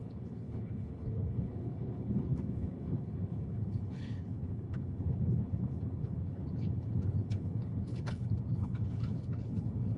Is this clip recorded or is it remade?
remade